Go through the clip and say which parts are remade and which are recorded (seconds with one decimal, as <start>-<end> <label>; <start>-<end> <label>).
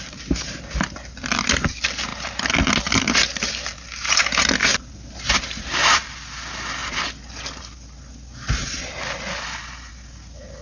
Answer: 0.0-10.6 recorded